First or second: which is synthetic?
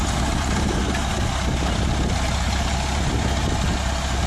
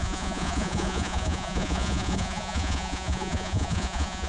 second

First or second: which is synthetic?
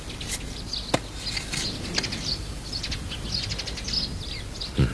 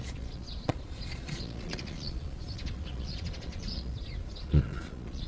second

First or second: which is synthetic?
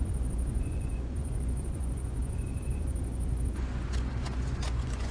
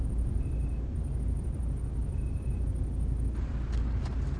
first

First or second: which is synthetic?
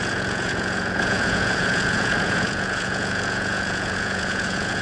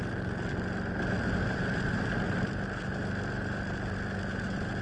first